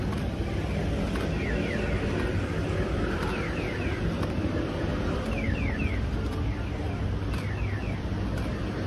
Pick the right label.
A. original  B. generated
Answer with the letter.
A